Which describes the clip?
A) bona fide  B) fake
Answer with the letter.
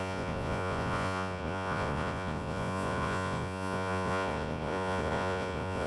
B